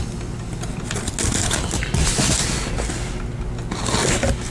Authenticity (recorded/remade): recorded